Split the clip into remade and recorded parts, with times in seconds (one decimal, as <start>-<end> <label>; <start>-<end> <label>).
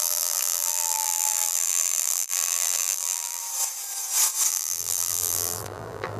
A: 0.0-3.4 remade; 3.4-4.5 recorded; 4.5-6.2 remade